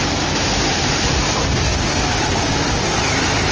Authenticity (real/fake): real